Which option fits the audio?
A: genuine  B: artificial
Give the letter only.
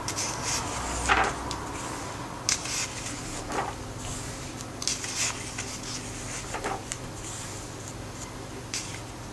A